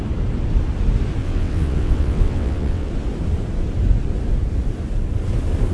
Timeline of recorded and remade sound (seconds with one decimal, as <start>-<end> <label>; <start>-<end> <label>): 0.0-1.2 recorded; 1.2-2.9 remade; 2.9-5.7 recorded